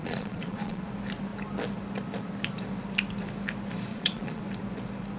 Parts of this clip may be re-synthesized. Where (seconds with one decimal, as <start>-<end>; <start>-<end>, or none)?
0.0-0.9; 3.9-4.4